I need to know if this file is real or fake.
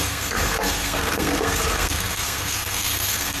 fake